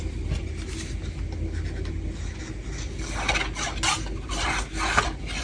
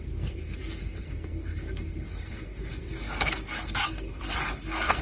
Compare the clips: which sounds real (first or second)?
first